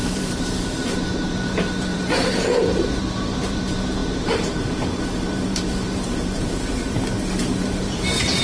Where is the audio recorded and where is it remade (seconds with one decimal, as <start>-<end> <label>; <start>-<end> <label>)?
0.0-8.4 remade